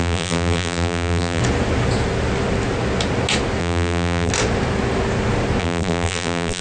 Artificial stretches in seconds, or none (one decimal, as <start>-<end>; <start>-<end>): 0.0-1.4; 3.6-4.3; 5.6-6.6